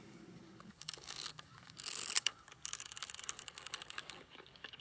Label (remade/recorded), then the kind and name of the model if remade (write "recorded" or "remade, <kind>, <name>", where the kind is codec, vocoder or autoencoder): remade, codec, DAC